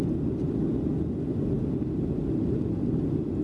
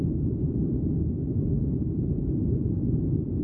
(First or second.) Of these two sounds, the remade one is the second